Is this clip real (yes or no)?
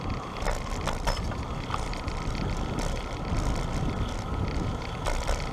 no